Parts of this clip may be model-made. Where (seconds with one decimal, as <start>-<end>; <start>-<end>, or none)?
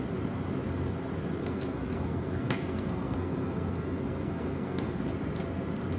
1.4-5.0